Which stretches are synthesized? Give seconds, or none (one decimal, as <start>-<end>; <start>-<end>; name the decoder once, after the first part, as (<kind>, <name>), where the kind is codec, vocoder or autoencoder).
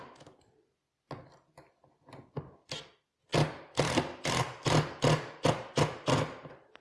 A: none